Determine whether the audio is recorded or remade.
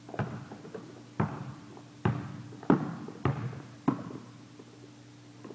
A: recorded